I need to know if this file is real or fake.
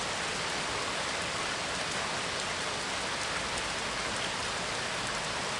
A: real